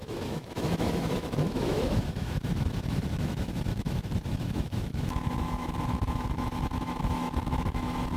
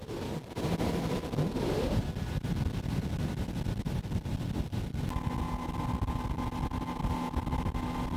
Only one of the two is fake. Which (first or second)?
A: first